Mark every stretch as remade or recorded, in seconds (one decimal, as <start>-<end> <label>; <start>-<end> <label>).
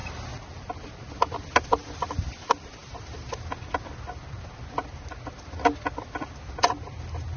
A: 0.0-7.4 recorded